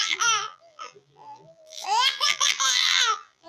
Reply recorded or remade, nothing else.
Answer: remade